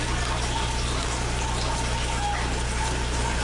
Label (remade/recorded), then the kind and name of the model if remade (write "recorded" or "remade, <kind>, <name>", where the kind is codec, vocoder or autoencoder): recorded